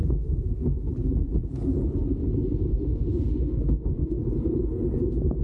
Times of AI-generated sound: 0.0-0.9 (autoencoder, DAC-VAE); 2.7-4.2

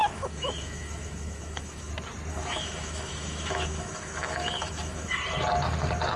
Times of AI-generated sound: 0.0-1.9 (autoencoder, DAC-VAE); 2.3-5.2

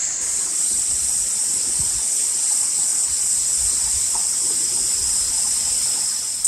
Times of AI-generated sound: none

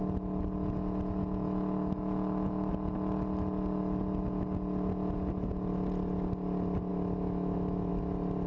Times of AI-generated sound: 1.2-2.7 (autoencoder, DAC-VAE); 6.9-7.9

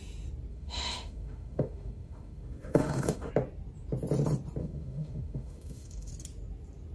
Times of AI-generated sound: 0.5-3.3 (autoencoder, DAC-VAE); 4.6-6.1